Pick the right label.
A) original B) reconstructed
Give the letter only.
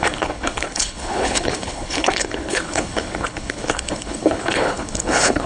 B